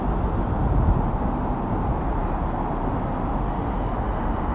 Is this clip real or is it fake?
real